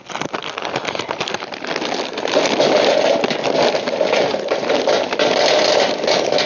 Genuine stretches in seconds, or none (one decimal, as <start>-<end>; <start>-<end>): 0.0-6.5